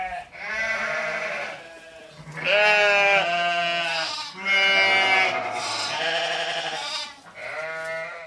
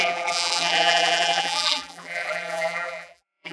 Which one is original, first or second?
first